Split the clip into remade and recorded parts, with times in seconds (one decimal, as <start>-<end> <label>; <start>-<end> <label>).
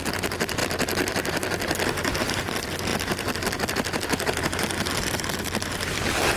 0.0-6.4 recorded